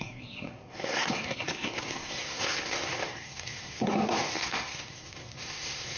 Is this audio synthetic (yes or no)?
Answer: yes